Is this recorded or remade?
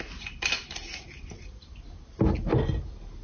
recorded